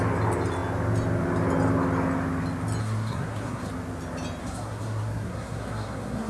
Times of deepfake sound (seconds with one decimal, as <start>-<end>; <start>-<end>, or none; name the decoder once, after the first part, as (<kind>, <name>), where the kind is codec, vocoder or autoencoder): 2.8-3.7 (codec, SNAC); 4.4-6.3